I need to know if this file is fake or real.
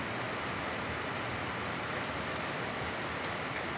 real